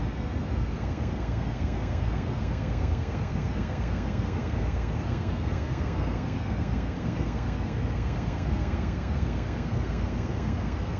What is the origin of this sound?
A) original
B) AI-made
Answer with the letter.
B